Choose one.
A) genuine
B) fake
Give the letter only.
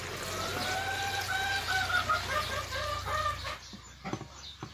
A